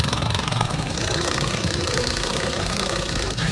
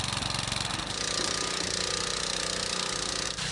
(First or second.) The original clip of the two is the second